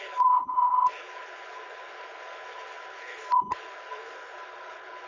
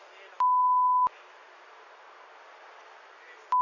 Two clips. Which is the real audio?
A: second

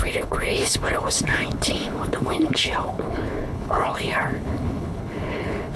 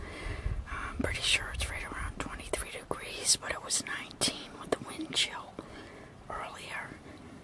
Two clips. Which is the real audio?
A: second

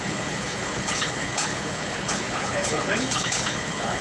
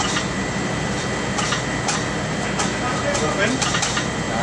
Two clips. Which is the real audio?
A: second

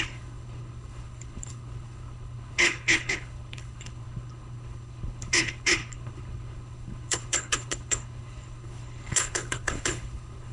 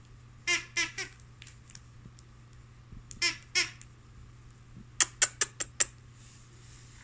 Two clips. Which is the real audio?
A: second